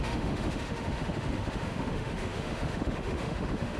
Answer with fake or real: fake